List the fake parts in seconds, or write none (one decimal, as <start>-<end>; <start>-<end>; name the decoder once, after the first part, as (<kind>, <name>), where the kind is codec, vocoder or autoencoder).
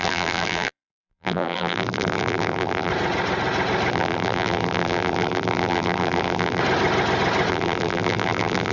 0.0-2.9 (vocoder, BigVGAN v2); 3.9-6.6; 7.5-8.7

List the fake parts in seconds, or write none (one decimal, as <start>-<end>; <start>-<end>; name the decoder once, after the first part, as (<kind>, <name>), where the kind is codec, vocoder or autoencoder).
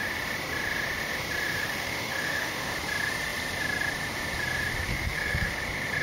1.6-2.7 (autoencoder, DAC-VAE); 4.9-5.6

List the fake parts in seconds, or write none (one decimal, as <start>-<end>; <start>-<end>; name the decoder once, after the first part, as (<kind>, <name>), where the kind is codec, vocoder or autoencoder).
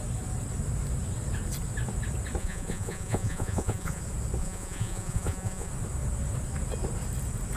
2.4-4.0 (vocoder, Vocos); 4.4-5.7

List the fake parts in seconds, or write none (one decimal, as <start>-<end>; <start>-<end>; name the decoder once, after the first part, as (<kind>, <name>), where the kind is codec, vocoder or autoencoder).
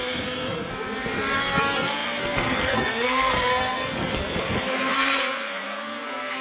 0.0-0.7 (codec, SNAC); 1.4-6.4